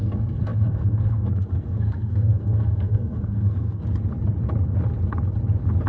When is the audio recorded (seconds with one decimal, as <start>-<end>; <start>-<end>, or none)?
3.8-5.9